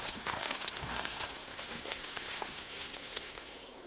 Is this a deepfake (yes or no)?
yes